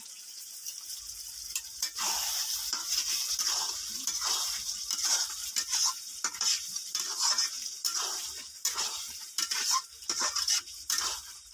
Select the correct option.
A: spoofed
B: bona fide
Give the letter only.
A